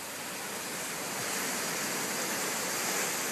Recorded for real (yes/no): yes